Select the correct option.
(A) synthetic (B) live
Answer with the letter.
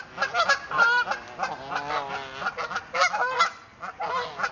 B